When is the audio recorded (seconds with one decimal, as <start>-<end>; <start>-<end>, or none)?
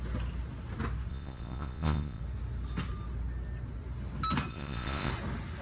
0.0-1.1; 2.2-4.5; 5.1-5.6